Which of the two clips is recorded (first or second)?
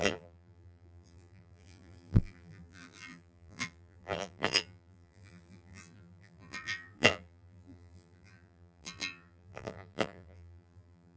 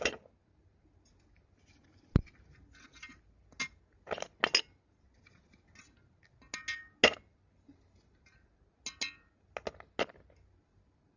second